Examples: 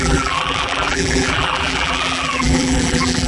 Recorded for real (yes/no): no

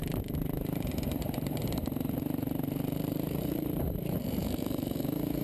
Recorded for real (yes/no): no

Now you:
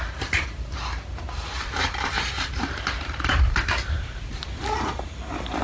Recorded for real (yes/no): no